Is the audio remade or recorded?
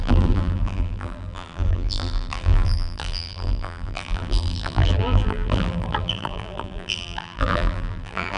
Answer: remade